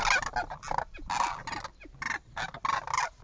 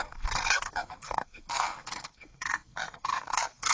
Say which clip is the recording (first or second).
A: first